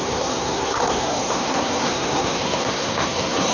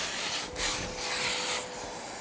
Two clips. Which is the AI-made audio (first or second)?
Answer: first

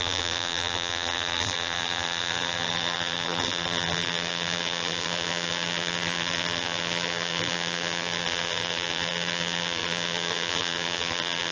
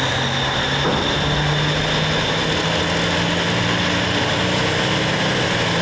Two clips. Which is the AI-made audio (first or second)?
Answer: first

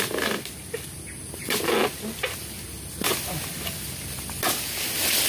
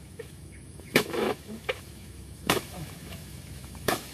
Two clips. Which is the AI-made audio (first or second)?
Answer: second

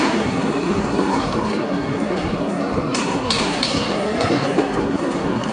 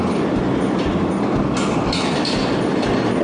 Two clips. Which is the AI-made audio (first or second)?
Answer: first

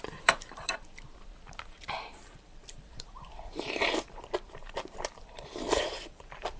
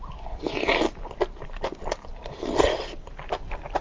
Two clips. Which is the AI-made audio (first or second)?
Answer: first